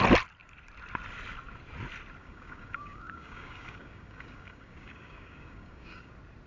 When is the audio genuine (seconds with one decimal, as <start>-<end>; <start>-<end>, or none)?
0.0-2.2; 6.1-6.5